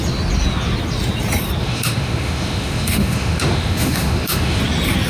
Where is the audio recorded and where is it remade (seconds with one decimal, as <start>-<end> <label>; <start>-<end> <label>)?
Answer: 0.0-1.6 recorded; 1.6-4.6 remade; 4.6-5.1 recorded